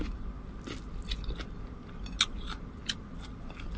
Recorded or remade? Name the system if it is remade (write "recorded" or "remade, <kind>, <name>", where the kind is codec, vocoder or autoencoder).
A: recorded